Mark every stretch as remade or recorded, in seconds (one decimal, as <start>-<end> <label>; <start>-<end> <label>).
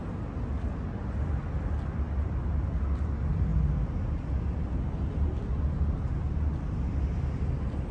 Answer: 0.0-7.9 recorded